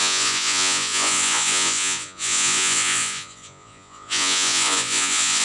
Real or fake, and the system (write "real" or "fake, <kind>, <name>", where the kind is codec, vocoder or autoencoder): fake, vocoder, Vocos